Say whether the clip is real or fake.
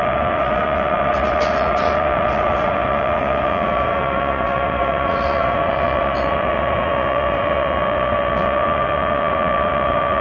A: fake